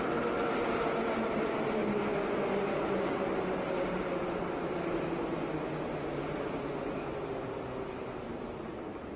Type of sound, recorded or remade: recorded